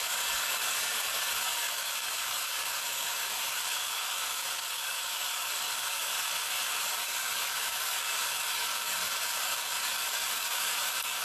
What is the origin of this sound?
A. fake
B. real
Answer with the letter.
A